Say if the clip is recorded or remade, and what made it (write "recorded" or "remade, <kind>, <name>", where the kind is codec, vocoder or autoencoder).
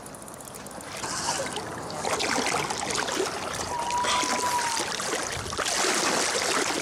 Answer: recorded